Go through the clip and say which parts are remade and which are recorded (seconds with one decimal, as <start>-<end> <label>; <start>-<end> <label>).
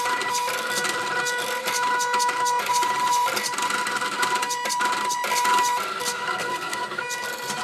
0.0-6.1 recorded; 6.1-7.0 remade; 7.0-7.6 recorded